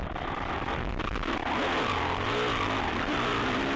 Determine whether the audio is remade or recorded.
recorded